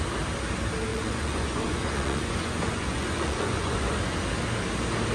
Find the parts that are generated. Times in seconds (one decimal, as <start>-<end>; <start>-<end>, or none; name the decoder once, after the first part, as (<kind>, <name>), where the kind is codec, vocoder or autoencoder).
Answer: 0.9-4.0 (vocoder, Vocos)